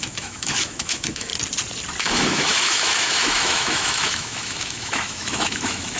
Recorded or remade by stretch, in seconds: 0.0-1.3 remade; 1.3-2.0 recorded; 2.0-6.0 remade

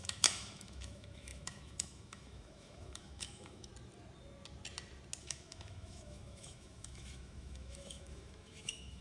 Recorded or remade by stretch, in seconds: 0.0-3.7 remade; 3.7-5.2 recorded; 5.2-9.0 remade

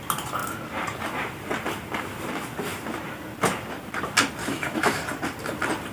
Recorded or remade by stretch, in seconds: 0.0-4.4 recorded; 4.4-5.0 remade; 5.0-5.9 recorded